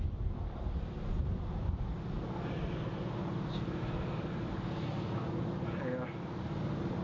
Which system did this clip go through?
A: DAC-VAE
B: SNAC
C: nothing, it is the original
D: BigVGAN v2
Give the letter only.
C